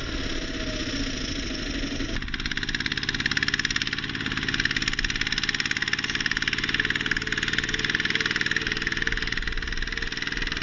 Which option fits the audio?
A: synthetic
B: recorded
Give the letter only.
B